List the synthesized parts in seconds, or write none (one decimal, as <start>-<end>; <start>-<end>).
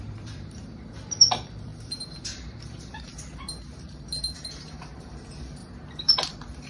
0.0-5.6; 6.3-6.7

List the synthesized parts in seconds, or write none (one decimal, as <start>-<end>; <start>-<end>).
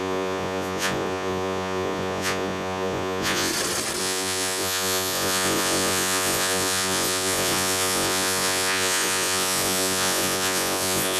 0.0-3.5; 4.0-11.2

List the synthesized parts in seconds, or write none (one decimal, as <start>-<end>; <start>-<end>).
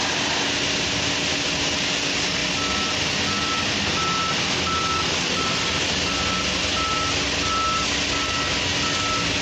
none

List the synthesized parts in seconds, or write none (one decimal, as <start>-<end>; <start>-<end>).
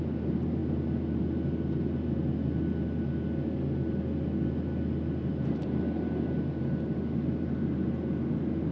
none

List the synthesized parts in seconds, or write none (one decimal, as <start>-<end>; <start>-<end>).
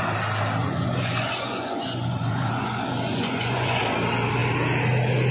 0.6-3.8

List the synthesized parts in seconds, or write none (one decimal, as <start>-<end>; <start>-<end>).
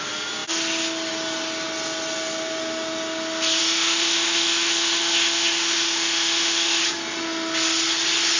3.6-6.8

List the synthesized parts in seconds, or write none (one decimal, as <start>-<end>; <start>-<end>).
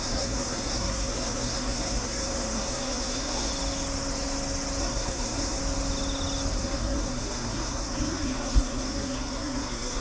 0.0-3.5; 4.8-5.6; 6.5-10.0